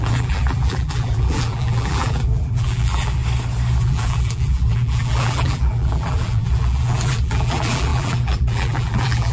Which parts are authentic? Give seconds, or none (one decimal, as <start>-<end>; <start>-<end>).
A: 3.2-3.8